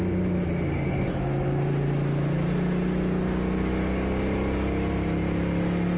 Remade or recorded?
recorded